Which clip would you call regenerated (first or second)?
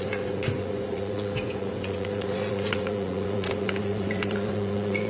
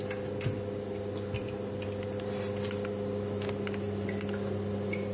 first